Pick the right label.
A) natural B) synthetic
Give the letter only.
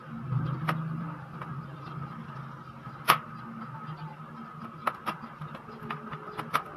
A